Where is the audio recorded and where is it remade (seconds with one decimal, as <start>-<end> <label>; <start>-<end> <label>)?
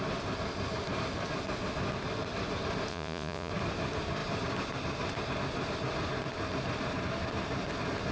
0.0-2.9 recorded; 2.9-3.5 remade; 3.5-8.1 recorded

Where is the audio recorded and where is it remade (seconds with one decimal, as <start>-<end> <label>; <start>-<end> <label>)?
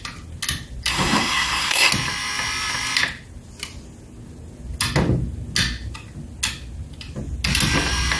0.0-0.9 recorded; 0.9-1.9 remade; 1.9-8.2 recorded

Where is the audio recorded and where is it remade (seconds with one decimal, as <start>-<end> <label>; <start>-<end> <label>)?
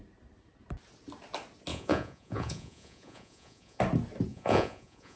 0.0-1.7 recorded; 1.7-3.8 remade; 3.8-4.3 recorded; 4.3-5.2 remade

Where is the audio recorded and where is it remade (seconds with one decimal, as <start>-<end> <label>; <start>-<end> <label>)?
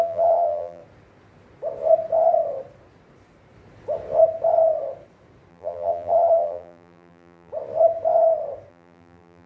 0.0-0.8 remade; 0.8-5.5 recorded; 5.5-7.5 remade; 7.5-8.7 recorded; 8.7-9.5 remade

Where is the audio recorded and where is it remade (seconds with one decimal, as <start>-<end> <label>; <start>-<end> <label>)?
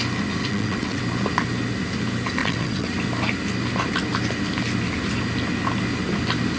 0.0-0.4 recorded; 0.4-1.0 remade; 1.0-2.4 recorded; 2.4-2.9 remade; 2.9-6.6 recorded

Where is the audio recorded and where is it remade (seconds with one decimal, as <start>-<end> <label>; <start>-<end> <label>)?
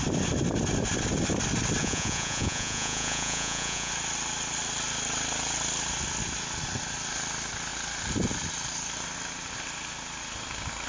0.0-1.8 recorded; 1.8-3.9 remade; 3.9-10.9 recorded